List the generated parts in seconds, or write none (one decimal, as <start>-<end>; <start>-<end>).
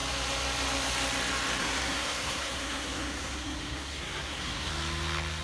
1.6-4.7